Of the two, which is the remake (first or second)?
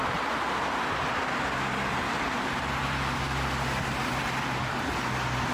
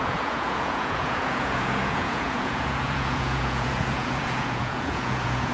second